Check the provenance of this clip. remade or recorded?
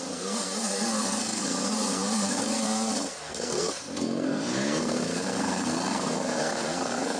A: remade